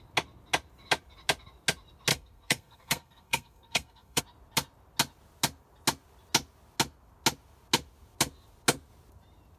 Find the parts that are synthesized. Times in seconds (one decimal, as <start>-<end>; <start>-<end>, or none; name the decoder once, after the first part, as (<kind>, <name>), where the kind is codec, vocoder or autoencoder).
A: 2.1-4.2 (codec, SNAC)